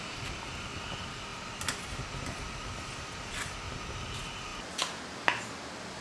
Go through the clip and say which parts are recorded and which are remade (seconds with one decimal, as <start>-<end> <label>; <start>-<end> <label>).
0.0-6.0 recorded